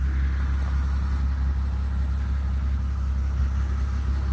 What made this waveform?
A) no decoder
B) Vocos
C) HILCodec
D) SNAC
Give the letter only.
A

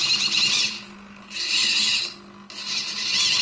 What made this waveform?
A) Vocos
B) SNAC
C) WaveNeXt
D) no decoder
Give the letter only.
D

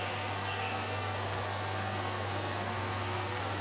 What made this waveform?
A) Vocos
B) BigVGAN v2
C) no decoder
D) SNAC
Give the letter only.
D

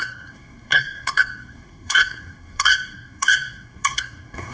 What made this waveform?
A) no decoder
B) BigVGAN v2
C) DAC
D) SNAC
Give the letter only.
D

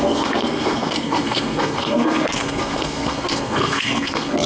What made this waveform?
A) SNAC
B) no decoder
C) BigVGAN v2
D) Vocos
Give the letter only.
A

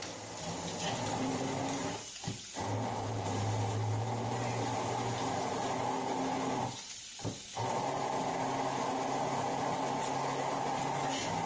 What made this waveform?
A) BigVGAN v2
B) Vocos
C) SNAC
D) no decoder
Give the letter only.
D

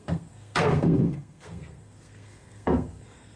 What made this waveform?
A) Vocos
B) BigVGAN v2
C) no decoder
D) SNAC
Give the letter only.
D